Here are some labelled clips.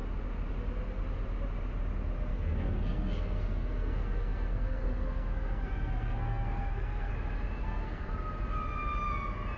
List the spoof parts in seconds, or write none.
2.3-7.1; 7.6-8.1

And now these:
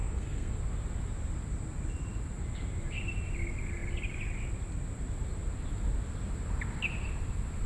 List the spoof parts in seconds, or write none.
0.0-0.6

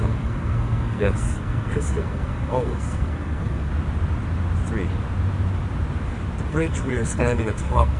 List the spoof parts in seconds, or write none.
0.0-3.7; 6.5-8.0

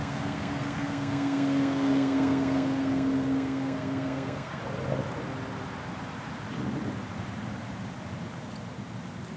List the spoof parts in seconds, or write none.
0.0-4.6

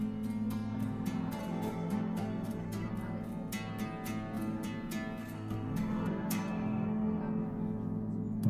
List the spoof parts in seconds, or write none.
1.4-2.9; 5.2-7.2

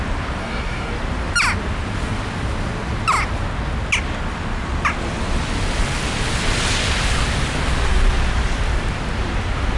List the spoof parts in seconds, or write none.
0.4-0.9

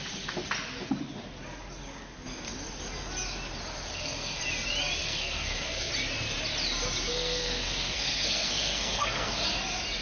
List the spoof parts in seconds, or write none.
3.9-4.4; 5.0-5.9; 7.1-9.4

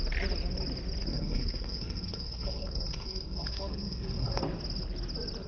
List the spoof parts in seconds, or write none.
1.1-4.4